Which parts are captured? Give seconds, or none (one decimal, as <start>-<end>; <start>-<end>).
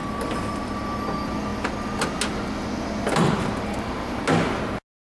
0.0-5.1